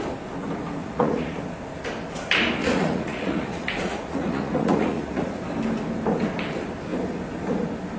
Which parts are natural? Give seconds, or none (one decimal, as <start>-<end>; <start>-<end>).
0.0-0.8; 1.4-2.6; 5.4-8.0